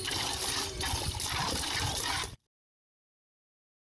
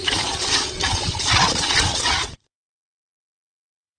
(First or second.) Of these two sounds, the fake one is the second